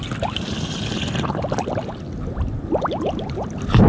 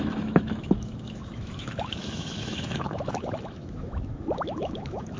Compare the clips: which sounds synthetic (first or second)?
second